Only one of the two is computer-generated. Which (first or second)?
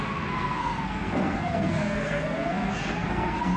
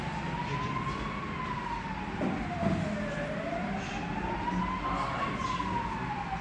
first